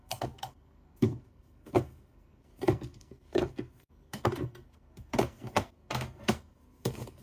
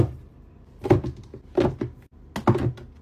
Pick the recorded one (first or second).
second